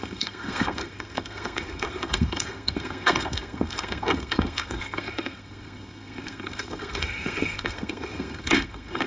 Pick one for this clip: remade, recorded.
remade